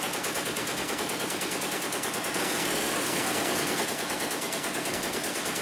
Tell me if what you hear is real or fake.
fake